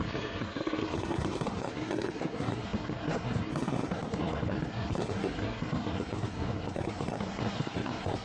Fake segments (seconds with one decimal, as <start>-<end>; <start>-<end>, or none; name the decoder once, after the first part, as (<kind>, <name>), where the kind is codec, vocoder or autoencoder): 0.0-8.2 (codec, SNAC)